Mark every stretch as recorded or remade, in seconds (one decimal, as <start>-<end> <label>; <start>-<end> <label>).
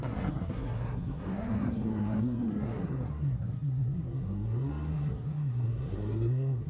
0.0-6.7 remade